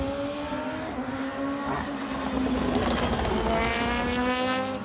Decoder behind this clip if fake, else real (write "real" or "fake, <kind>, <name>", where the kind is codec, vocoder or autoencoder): real